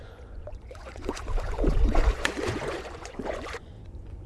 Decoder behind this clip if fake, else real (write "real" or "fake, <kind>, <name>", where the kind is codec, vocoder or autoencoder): fake, vocoder, Vocos